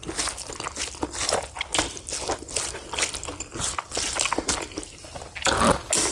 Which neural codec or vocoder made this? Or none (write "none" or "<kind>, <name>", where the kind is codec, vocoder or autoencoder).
none